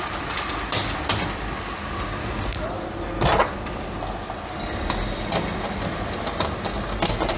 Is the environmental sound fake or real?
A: real